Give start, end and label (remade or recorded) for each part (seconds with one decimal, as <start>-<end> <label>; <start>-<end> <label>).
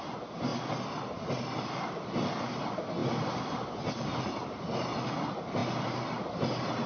0.0-6.9 recorded